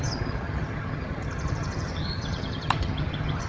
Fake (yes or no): yes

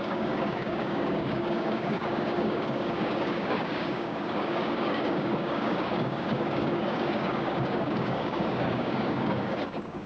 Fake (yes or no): yes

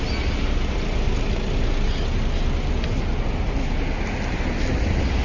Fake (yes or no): no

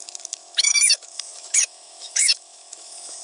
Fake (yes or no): yes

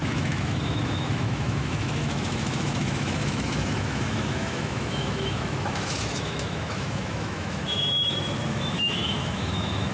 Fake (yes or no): yes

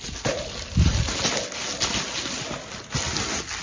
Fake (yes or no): no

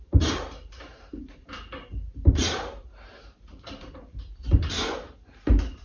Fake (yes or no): yes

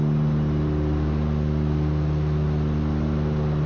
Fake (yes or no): no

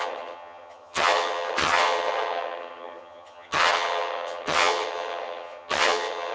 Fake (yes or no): yes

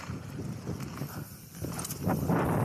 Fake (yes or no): no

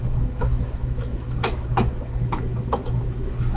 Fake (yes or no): yes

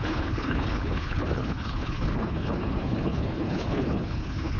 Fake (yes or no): yes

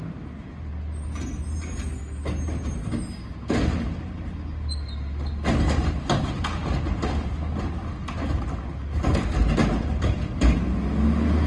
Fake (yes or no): no